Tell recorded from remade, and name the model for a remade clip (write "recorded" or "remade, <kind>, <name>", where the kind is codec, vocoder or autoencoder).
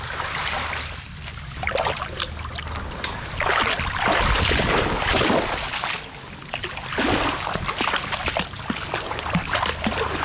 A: recorded